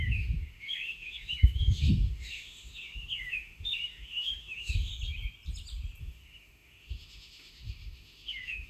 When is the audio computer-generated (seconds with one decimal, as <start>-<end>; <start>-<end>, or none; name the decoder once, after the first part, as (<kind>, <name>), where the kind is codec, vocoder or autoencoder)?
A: 0.0-4.9 (autoencoder, DAC-VAE); 6.0-8.7